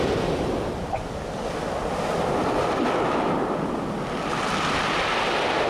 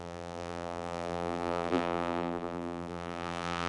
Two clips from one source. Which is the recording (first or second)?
first